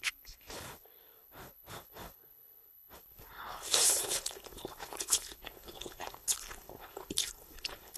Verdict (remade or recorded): remade